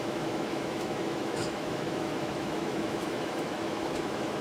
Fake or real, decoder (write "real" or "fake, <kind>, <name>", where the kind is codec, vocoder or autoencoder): fake, autoencoder, DAC-VAE